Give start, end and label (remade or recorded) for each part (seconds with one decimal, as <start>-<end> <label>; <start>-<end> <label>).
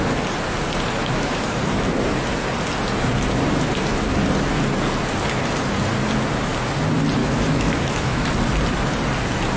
0.0-1.0 recorded; 1.0-1.5 remade; 1.5-7.2 recorded; 7.2-8.3 remade; 8.3-9.6 recorded